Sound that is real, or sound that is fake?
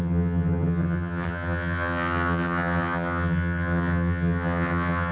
fake